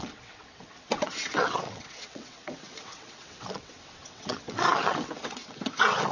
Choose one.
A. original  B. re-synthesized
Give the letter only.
B